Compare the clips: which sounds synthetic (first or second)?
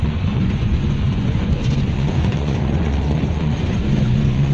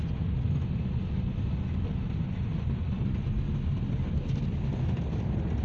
first